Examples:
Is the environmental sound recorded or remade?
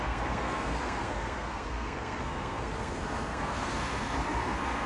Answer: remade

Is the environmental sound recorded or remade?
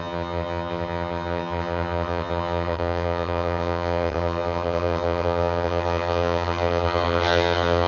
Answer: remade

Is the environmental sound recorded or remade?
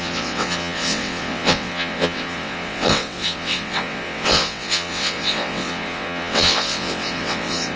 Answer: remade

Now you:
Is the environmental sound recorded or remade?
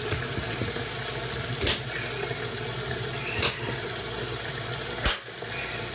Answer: recorded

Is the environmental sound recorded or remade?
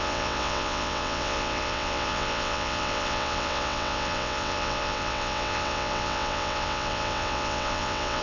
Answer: remade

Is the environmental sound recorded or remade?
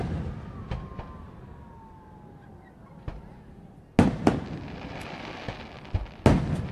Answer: recorded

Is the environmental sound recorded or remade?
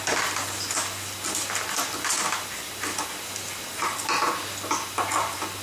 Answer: recorded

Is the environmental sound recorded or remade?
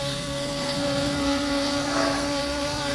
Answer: remade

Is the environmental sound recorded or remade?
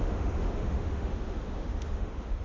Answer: remade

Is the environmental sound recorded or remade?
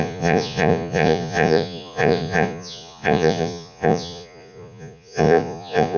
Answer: remade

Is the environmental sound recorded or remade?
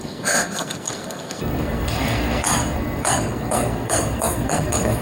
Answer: remade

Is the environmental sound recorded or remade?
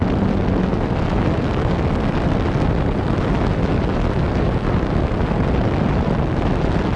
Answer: recorded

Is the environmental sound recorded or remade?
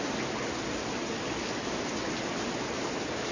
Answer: recorded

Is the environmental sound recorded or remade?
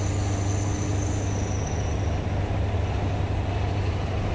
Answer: recorded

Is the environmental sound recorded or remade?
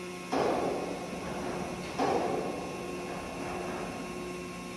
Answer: recorded